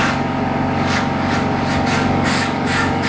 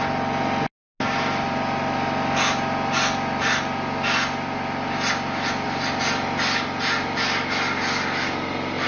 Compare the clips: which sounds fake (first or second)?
first